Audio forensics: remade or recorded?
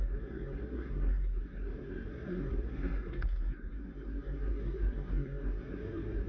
remade